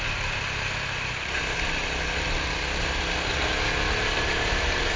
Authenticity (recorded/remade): recorded